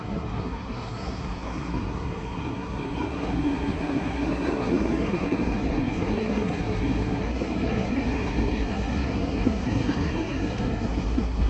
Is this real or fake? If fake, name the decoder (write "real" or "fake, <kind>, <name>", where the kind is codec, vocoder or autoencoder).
fake, codec, SNAC